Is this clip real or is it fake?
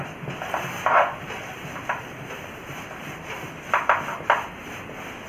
real